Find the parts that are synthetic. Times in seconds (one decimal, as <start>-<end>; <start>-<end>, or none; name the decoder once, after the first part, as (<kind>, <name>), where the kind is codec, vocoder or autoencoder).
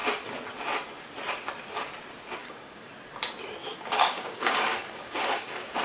2.4-2.9 (codec, DAC); 3.6-5.8